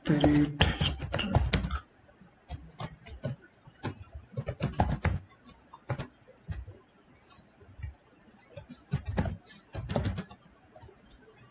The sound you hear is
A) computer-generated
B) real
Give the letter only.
B